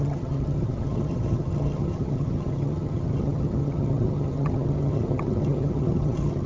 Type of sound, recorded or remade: remade